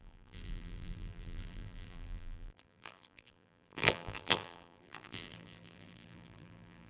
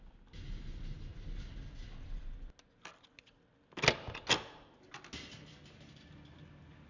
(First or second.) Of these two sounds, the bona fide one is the second